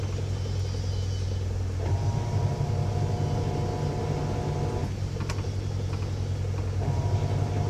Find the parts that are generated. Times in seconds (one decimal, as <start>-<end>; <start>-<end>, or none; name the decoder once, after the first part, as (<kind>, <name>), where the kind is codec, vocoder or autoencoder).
none